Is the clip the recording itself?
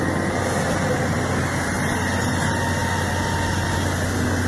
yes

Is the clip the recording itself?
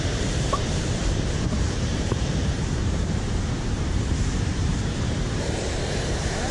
no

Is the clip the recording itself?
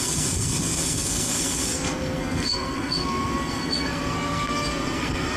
no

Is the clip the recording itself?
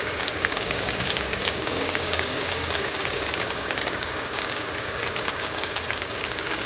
no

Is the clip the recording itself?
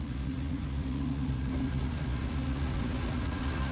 no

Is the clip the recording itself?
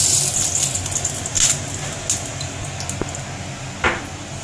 yes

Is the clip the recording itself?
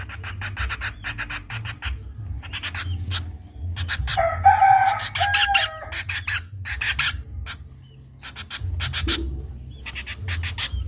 yes